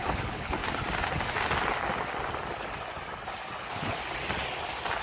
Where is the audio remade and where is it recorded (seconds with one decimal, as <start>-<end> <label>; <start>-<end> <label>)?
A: 0.0-0.6 remade; 0.6-3.6 recorded; 3.6-4.0 remade; 4.0-5.0 recorded